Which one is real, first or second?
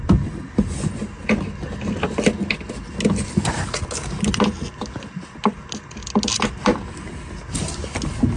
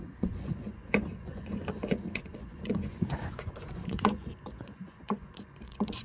first